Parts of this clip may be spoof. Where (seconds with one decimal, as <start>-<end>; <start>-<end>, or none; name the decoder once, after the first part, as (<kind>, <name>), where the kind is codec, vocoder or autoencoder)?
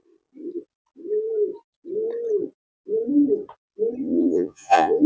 4.0-5.1 (vocoder, Vocos)